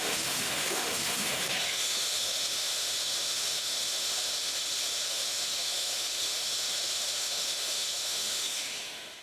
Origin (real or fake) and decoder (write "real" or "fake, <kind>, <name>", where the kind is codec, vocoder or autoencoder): fake, autoencoder, DAC-VAE